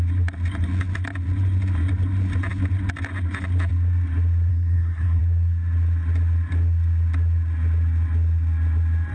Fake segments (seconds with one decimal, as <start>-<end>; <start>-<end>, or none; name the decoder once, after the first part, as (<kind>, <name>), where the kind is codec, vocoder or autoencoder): 4.5-5.2 (codec, SNAC)